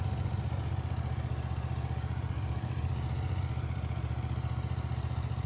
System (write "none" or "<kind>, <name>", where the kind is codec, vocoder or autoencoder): none